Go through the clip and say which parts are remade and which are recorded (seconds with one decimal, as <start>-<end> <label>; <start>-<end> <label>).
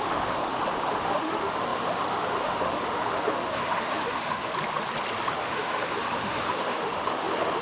0.0-0.4 remade; 0.4-1.0 recorded; 1.0-4.5 remade; 4.5-5.3 recorded; 5.3-7.6 remade